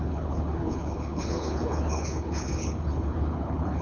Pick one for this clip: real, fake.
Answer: fake